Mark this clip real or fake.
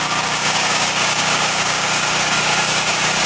fake